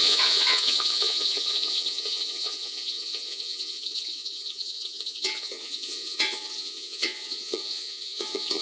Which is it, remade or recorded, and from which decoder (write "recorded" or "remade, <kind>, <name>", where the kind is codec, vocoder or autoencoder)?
remade, vocoder, Vocos